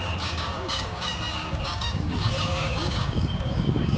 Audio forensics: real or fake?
fake